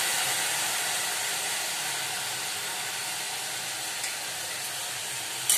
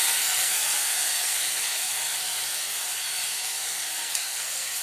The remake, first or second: second